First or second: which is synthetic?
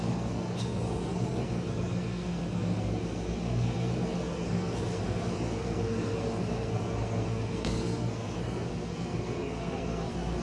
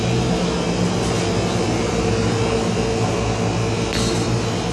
first